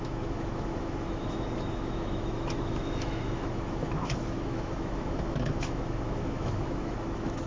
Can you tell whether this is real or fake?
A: fake